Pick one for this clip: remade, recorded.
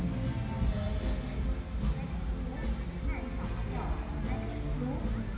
recorded